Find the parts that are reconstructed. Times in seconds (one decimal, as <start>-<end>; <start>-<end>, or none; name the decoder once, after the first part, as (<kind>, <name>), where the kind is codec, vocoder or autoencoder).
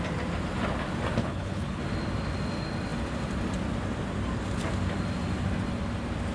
1.2-1.8 (codec, HILCodec)